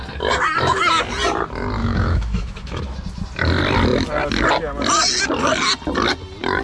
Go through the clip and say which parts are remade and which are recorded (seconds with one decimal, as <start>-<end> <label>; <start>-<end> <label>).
0.0-1.8 recorded; 1.8-2.8 remade; 2.8-6.6 recorded